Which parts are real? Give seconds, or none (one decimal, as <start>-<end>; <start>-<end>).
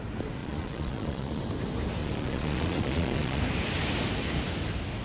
0.0-0.4; 1.4-2.0; 3.4-5.0